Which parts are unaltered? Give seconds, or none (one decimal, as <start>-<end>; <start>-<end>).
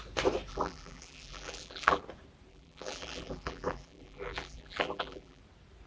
0.0-0.5; 2.0-2.5; 5.4-5.9